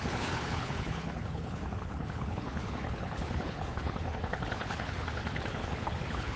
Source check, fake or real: fake